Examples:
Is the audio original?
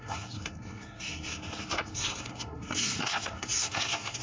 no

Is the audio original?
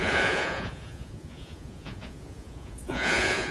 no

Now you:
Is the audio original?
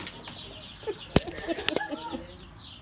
yes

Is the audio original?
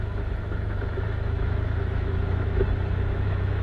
no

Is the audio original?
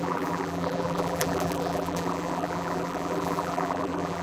no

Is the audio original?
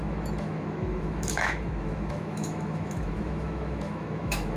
no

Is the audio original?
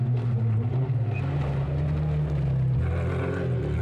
yes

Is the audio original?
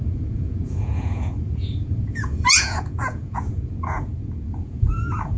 no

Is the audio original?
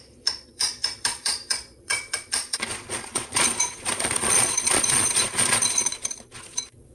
no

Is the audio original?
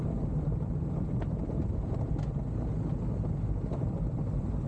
yes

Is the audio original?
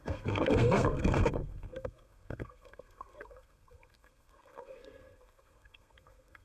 no